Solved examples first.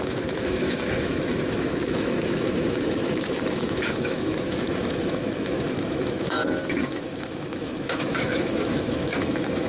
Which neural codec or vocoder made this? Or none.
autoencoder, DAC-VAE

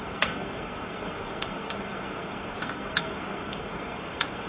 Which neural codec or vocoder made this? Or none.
codec, SNAC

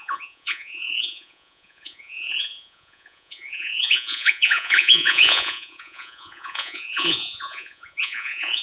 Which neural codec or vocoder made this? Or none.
vocoder, Vocos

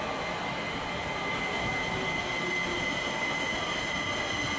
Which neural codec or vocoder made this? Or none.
none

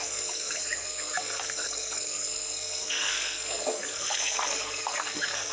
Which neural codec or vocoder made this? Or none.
codec, SNAC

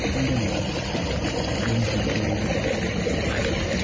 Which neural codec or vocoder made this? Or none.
none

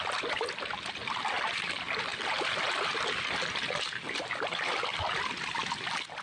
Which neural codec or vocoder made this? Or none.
none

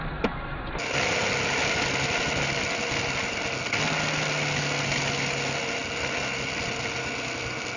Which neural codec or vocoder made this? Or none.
none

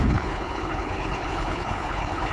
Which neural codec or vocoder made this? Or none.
codec, HILCodec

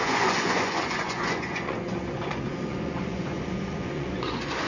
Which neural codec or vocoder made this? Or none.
vocoder, Vocos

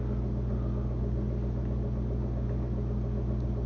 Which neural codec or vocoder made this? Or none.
none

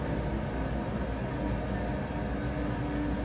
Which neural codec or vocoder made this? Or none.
none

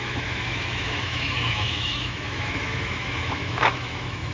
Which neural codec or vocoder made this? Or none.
autoencoder, DAC-VAE